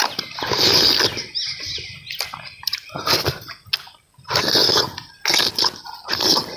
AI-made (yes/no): no